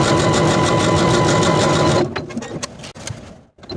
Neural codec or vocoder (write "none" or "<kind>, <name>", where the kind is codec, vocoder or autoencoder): none